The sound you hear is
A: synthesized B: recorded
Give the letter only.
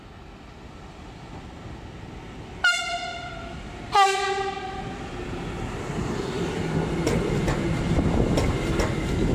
B